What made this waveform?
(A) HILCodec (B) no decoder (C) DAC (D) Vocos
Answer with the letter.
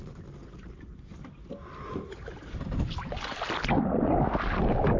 B